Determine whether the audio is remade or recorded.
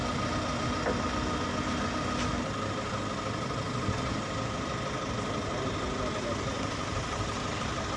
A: recorded